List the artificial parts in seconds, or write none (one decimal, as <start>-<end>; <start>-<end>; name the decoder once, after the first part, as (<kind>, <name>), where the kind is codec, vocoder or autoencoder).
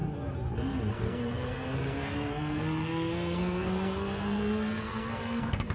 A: 0.9-5.7 (codec, SNAC)